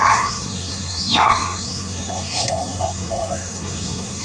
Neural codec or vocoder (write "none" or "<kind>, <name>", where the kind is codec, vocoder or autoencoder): codec, SNAC